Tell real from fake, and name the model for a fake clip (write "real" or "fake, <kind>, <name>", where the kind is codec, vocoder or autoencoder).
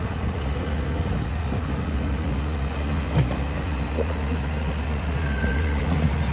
fake, vocoder, Vocos